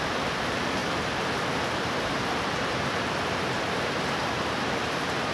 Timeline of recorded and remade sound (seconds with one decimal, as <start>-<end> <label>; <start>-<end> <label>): 0.0-5.3 remade